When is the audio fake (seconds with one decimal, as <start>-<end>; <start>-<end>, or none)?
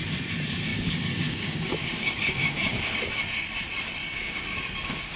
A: 0.7-3.1; 4.0-5.2